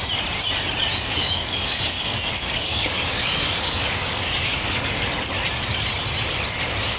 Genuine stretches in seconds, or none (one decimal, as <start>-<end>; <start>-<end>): 0.0-0.9; 5.0-7.0

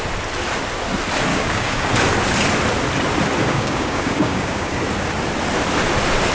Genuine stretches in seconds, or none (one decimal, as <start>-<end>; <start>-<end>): 0.0-1.3; 1.9-3.4; 4.8-6.3

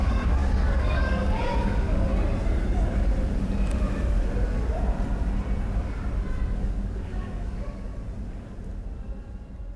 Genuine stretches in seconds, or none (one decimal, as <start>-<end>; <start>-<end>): 2.1-6.5; 7.9-9.8

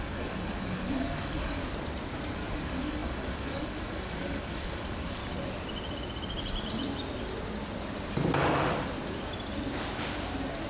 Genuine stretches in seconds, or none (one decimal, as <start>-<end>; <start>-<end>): 1.6-2.5; 5.2-10.7

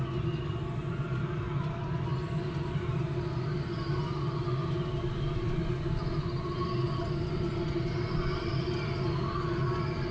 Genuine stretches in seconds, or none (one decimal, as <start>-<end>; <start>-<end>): 0.0-10.1

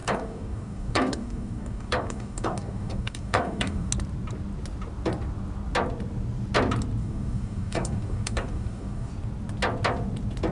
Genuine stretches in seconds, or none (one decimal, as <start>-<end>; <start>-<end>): 3.9-7.0; 9.1-10.5

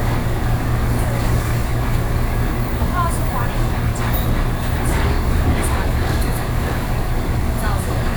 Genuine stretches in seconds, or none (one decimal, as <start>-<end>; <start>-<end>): 3.9-4.8

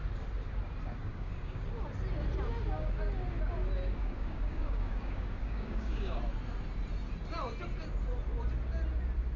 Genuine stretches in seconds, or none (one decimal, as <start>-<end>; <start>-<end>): 0.0-1.0; 1.6-4.0; 6.2-9.4